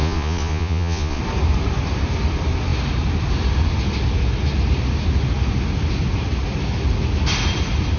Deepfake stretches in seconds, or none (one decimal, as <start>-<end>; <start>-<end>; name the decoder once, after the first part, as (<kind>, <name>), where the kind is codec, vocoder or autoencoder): 0.0-1.2 (vocoder, Vocos)